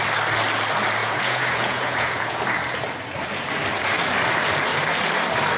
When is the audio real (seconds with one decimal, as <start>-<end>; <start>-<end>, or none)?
0.0-1.0; 2.4-5.6